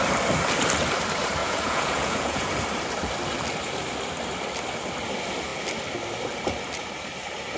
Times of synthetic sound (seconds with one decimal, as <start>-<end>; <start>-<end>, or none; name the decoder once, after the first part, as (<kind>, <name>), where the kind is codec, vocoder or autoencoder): 1.4-2.5 (vocoder, Vocos)